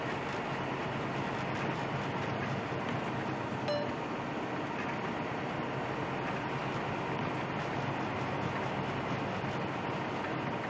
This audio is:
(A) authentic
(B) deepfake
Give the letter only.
A